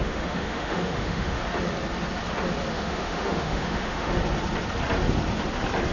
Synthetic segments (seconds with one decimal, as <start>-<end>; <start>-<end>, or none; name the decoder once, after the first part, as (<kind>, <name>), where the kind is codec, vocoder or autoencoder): 0.0-1.4 (autoencoder, DAC-VAE); 2.7-4.1